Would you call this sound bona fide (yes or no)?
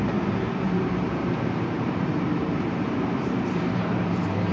no